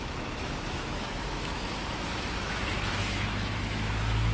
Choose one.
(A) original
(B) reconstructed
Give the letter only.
B